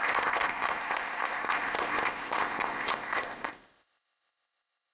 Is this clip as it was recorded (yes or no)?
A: no